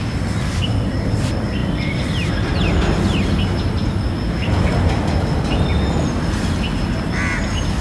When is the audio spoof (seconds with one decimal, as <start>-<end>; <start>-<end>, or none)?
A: none